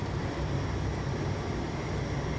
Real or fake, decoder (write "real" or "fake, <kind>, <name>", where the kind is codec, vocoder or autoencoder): real